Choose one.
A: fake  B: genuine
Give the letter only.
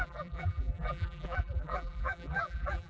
A